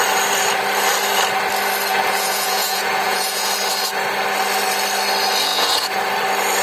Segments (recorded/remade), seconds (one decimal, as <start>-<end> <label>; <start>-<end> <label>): 0.0-1.9 recorded; 1.9-3.5 remade; 3.5-5.5 recorded; 5.5-6.0 remade; 6.0-6.6 recorded